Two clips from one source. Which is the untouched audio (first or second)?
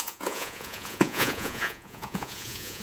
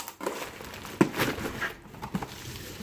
second